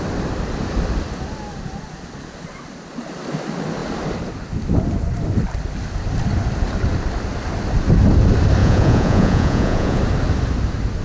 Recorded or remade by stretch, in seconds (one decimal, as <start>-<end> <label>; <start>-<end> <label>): 0.0-8.6 recorded; 8.6-10.0 remade; 10.0-11.0 recorded